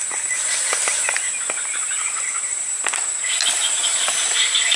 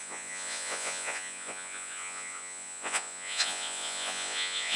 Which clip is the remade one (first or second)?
second